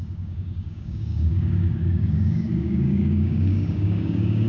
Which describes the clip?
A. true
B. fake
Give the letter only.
B